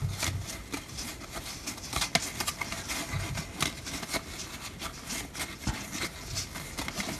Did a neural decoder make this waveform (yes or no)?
no